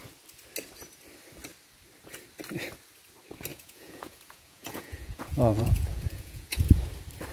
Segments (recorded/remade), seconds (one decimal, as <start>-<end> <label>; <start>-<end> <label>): 0.0-3.5 recorded; 3.5-6.6 remade; 6.6-7.3 recorded